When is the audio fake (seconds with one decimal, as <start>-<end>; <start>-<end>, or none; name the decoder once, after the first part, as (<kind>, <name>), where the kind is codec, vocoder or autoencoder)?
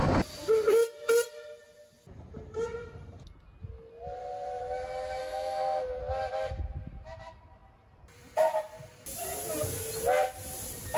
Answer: 5.2-6.0 (codec, SNAC)